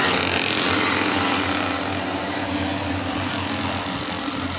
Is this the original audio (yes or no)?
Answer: yes